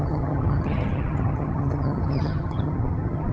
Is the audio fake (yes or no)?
yes